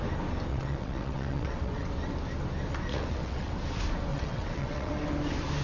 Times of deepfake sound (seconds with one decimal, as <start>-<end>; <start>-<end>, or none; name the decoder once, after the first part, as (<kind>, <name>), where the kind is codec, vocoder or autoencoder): 0.5-1.9 (vocoder, WaveNeXt); 2.9-3.5; 4.1-4.9